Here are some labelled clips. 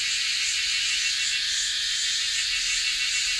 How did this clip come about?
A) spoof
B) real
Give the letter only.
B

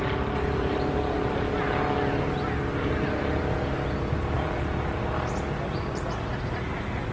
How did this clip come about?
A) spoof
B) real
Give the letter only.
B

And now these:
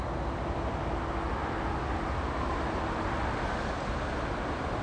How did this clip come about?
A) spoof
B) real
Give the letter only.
B